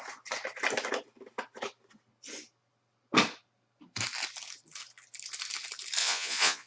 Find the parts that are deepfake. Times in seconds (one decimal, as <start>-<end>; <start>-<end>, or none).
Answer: 6.0-6.7